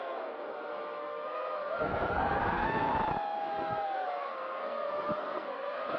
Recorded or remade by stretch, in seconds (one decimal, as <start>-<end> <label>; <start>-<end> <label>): 0.0-2.9 remade; 2.9-3.5 recorded; 3.5-6.0 remade